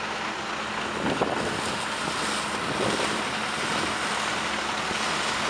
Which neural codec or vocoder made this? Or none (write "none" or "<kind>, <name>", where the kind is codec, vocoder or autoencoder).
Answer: none